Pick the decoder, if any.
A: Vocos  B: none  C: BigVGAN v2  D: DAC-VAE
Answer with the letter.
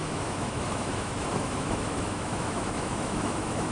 D